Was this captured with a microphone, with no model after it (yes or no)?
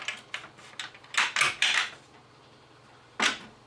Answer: yes